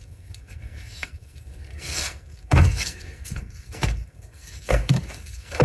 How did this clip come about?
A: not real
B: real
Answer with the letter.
A